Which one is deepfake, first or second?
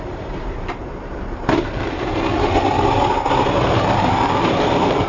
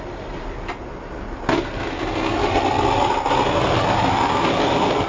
first